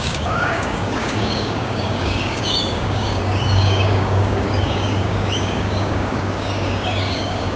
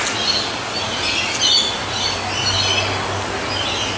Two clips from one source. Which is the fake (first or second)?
first